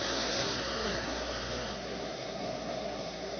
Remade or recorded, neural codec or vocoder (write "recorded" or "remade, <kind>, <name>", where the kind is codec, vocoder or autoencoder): remade, codec, SNAC